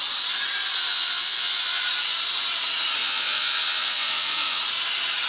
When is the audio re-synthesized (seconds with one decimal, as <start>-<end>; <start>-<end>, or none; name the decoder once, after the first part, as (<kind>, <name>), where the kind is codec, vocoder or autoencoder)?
0.9-1.8 (vocoder, Vocos); 3.0-4.6